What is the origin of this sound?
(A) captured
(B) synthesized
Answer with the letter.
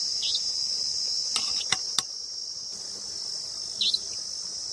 A